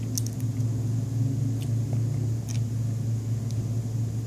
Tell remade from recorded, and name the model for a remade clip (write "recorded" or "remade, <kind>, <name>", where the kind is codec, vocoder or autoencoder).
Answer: recorded